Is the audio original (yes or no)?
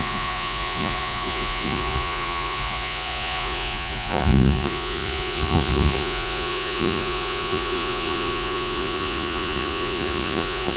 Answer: no